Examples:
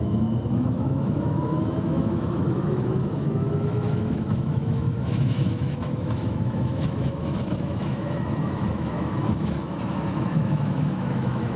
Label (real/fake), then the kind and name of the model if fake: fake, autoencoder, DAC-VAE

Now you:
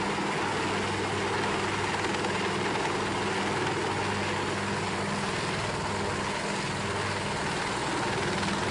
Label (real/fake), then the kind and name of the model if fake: real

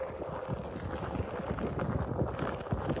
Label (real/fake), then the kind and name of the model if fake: real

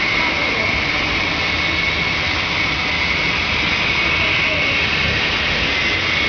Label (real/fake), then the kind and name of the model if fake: real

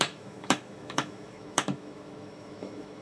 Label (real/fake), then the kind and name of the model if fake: fake, autoencoder, DAC-VAE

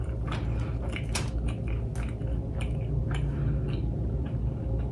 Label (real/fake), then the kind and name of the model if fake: real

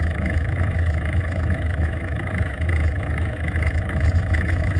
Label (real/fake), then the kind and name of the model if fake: fake, autoencoder, DAC-VAE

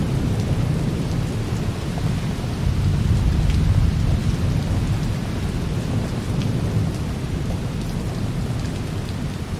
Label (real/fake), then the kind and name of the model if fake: real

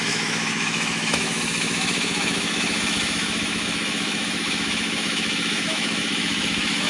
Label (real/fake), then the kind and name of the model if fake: fake, autoencoder, DAC-VAE